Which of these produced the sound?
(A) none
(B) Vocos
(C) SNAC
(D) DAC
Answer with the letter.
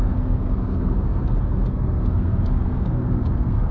C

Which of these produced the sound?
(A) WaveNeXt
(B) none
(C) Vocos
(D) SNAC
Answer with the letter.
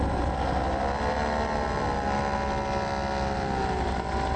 B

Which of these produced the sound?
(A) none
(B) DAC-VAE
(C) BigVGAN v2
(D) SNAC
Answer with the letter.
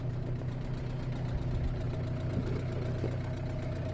A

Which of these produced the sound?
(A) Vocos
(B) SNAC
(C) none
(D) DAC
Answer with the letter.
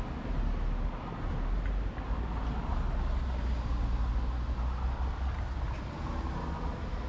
C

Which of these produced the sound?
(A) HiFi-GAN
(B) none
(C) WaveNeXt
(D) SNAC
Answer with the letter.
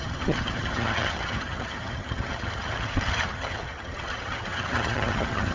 A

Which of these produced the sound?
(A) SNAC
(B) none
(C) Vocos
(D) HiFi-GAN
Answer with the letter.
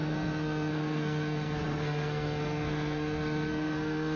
A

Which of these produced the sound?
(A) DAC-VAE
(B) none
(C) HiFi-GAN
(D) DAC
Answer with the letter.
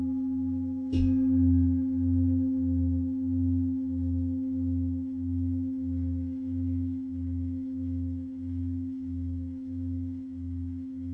A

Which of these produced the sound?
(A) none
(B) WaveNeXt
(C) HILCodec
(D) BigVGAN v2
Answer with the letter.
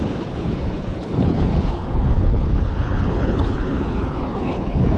C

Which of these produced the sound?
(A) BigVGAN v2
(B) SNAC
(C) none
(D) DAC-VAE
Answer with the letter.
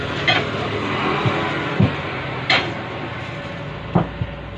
C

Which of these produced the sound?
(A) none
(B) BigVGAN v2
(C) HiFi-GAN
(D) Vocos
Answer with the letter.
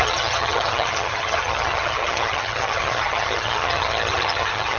C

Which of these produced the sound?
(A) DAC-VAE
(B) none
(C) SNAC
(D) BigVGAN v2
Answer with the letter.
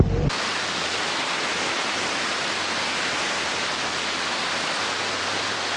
D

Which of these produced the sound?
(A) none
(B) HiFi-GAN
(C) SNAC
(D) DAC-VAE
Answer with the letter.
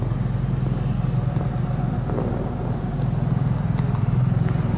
A